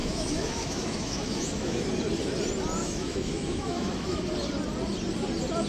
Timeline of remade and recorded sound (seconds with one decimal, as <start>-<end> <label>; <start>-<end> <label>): 0.0-1.9 remade; 1.9-2.8 recorded; 2.8-4.2 remade; 4.2-5.7 recorded